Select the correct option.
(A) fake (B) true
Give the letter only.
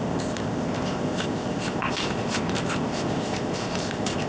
A